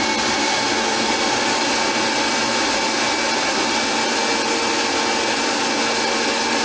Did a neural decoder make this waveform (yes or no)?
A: no